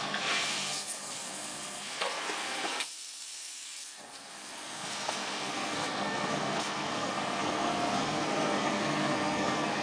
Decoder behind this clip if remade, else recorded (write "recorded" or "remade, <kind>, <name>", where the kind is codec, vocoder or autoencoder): remade, codec, SNAC